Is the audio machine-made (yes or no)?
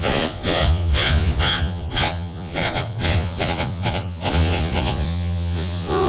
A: yes